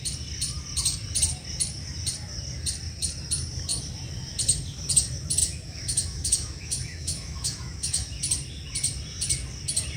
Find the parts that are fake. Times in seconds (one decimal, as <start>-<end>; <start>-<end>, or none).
5.4-8.2